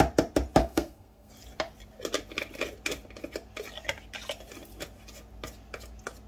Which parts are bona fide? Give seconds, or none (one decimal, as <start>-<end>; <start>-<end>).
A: 0.0-0.6; 1.3-6.3